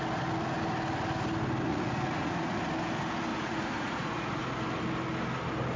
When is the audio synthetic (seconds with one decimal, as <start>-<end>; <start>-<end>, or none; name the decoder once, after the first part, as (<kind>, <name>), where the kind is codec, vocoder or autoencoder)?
1.7-2.6 (vocoder, Vocos); 3.3-4.4